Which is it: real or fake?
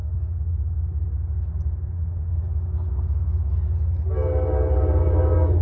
real